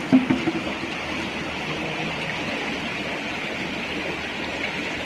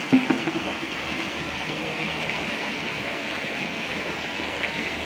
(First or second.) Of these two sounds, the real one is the first